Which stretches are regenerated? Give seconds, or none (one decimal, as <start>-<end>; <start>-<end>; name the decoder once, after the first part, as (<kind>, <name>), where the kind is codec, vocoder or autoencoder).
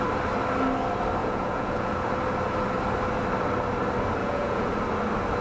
1.2-2.1 (vocoder, Vocos); 4.2-4.7